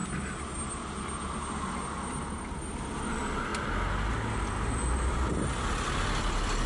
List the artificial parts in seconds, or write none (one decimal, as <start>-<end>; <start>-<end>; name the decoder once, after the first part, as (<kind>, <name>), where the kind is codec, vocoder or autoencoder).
none